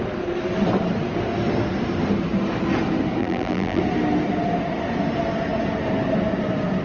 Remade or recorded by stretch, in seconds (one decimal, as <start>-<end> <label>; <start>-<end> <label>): 0.0-3.2 recorded; 3.2-3.8 remade; 3.8-6.8 recorded